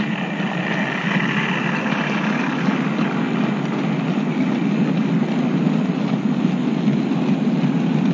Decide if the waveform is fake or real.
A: real